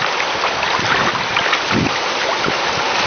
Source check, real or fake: real